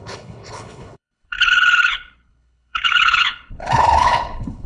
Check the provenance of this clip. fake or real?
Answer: fake